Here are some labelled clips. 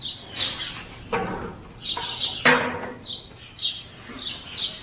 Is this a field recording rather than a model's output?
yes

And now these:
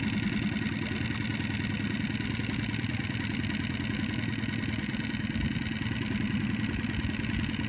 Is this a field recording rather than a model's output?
yes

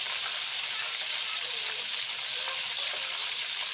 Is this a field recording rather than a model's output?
no